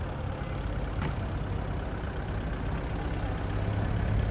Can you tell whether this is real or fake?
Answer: real